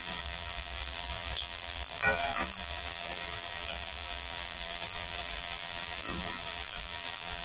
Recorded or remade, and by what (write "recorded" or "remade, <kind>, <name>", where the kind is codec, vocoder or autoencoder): remade, vocoder, BigVGAN v2